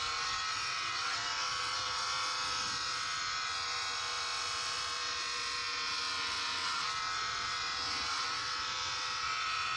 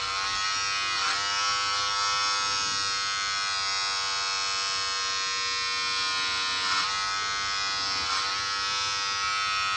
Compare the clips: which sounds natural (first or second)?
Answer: second